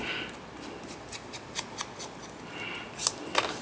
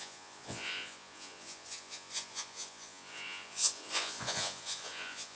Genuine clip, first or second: first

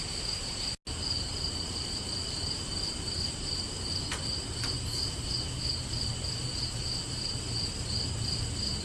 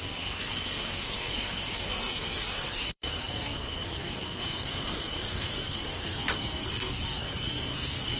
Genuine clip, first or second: first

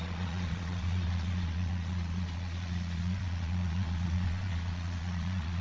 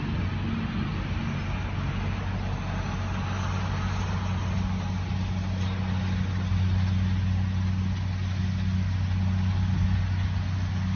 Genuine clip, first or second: second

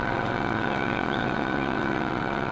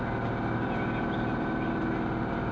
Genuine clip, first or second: second